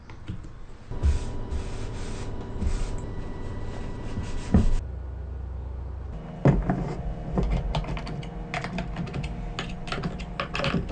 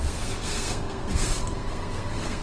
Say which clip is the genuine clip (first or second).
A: first